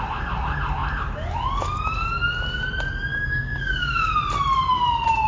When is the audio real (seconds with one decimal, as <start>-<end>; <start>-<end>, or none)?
0.0-3.1; 4.1-5.3